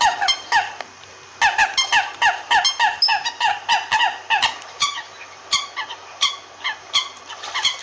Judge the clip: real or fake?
real